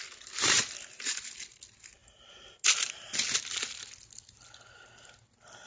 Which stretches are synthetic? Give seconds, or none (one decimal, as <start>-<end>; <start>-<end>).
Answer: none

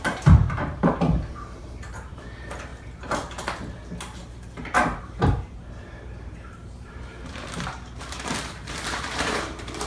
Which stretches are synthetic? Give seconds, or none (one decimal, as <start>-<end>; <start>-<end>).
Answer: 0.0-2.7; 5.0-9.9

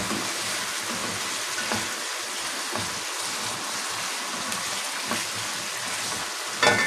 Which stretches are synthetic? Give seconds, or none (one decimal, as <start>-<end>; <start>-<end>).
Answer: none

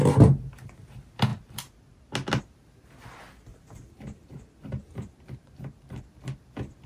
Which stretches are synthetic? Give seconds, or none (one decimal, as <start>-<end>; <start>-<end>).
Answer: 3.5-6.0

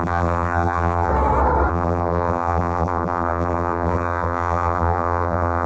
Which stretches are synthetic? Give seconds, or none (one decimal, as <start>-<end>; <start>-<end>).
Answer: 0.0-1.1; 1.7-5.7

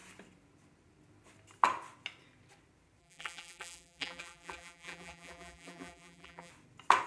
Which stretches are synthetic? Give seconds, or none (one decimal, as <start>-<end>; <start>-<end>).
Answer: 3.0-6.5